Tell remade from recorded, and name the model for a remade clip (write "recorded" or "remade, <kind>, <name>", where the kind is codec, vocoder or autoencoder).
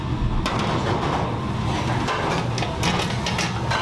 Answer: recorded